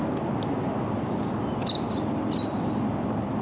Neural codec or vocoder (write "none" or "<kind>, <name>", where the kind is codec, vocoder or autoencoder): none